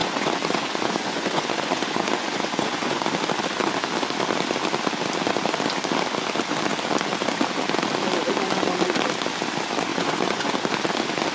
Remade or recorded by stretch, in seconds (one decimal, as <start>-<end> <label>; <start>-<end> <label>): 0.0-3.0 remade; 3.0-9.9 recorded; 9.9-10.5 remade; 10.5-11.3 recorded